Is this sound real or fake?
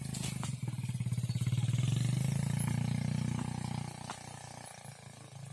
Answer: real